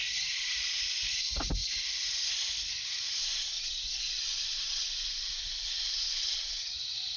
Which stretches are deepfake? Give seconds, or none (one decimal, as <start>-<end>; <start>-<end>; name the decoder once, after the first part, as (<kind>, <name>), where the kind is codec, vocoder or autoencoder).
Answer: 3.2-6.6 (vocoder, Vocos)